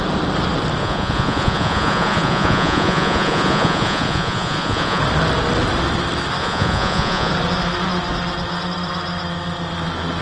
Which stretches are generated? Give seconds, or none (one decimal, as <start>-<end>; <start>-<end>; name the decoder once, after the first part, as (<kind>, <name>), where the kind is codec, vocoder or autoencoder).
0.8-5.0 (vocoder, Vocos); 6.4-7.3